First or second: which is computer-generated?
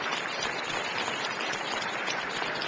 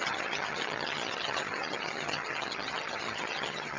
second